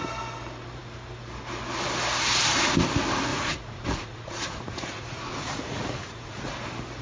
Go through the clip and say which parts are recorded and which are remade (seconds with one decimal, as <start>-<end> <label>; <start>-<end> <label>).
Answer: 0.0-3.3 recorded; 3.3-6.5 remade; 6.5-7.0 recorded